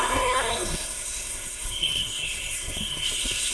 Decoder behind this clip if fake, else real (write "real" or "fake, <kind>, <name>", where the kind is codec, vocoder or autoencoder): fake, codec, SNAC